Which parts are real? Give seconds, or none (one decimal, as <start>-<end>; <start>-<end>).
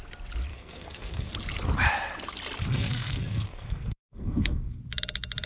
0.0-0.5; 1.3-2.7; 4.8-5.5